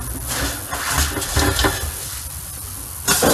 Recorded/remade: recorded